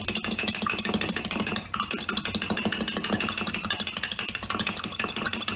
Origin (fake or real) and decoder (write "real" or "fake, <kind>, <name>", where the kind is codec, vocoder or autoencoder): real